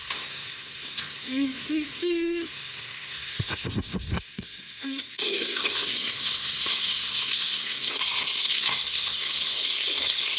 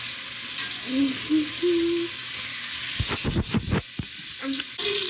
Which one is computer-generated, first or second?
first